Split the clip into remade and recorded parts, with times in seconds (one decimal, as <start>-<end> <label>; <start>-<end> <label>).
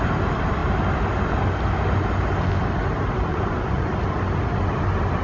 0.0-3.3 recorded; 3.3-3.9 remade; 3.9-5.2 recorded